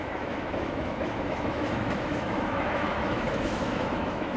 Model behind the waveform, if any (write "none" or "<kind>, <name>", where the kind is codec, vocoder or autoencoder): autoencoder, DAC-VAE